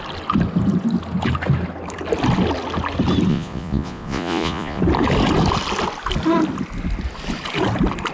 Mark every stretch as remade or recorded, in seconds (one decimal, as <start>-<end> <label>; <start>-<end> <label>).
0.0-3.3 recorded; 3.3-4.8 remade; 4.8-8.1 recorded